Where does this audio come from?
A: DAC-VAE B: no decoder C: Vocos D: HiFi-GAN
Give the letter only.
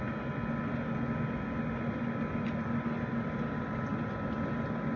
B